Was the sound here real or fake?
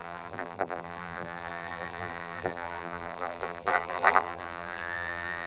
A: fake